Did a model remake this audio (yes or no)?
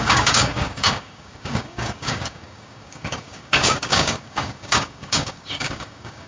yes